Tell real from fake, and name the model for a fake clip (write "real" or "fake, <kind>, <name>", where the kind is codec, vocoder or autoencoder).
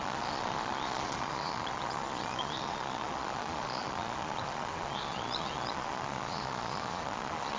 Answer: fake, vocoder, Vocos